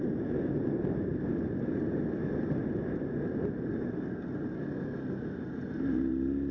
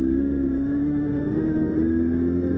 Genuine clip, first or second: first